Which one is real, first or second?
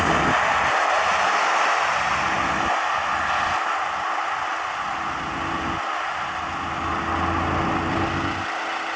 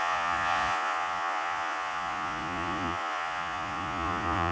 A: first